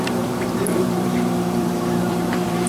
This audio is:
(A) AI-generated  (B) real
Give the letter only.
A